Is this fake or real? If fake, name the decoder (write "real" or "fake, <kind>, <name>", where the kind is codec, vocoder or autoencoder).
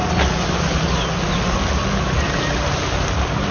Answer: real